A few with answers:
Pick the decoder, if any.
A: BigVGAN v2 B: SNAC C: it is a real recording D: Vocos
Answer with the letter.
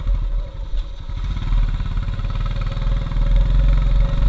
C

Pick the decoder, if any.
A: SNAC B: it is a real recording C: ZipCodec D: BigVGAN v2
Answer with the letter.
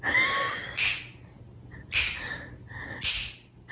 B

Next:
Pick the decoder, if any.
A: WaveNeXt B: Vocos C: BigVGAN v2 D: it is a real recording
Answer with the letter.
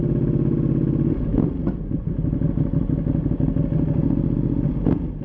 D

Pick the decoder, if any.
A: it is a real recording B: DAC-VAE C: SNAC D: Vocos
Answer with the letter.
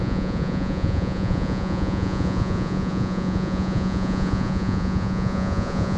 D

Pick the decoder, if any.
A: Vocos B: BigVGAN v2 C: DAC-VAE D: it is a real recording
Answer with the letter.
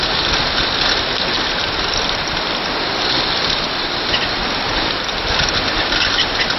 D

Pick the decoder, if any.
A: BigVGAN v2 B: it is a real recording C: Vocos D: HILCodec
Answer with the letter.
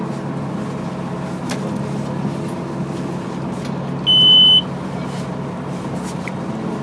B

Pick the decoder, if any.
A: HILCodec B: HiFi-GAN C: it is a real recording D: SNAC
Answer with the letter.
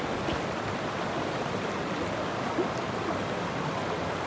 C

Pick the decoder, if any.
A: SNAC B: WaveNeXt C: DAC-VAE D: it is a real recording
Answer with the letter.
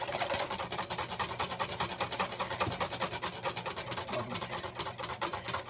D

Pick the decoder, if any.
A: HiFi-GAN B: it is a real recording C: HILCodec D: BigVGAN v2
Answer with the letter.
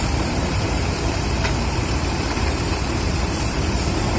D